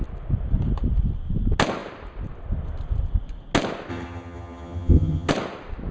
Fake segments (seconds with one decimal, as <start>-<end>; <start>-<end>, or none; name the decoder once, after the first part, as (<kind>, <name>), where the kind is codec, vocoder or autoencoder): 3.9-5.3 (vocoder, HiFi-GAN)